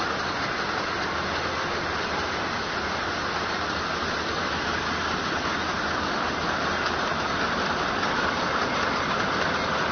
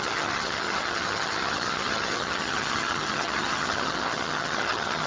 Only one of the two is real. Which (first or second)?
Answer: first